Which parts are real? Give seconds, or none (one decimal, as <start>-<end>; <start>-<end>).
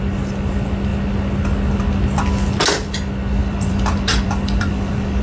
0.0-3.4